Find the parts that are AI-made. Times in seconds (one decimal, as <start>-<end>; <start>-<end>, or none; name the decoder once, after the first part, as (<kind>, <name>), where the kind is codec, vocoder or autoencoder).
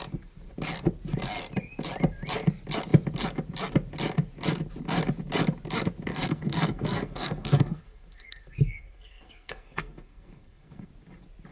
6.1-10.9 (codec, SNAC)